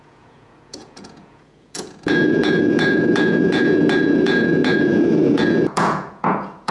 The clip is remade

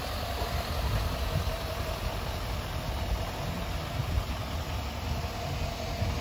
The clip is recorded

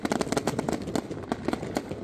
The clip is recorded